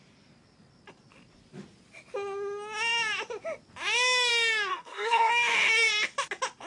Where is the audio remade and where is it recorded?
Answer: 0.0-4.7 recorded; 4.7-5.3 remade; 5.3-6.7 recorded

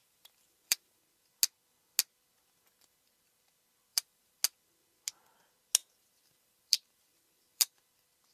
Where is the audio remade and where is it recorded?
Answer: 0.0-1.0 remade; 1.0-3.9 recorded; 3.9-4.4 remade; 4.4-5.8 recorded; 5.8-7.7 remade; 7.7-8.3 recorded

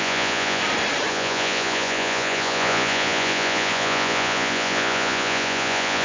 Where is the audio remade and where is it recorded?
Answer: 0.0-0.6 remade; 0.6-1.1 recorded; 1.1-6.0 remade

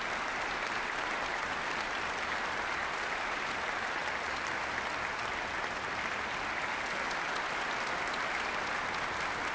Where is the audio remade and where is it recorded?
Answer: 0.0-9.5 recorded

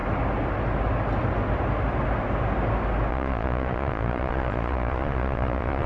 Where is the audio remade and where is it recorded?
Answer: 0.0-3.1 recorded; 3.1-5.9 remade

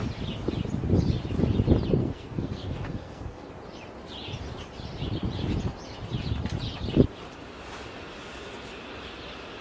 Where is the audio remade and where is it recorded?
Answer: 0.0-2.0 recorded; 2.0-3.5 remade; 3.5-9.6 recorded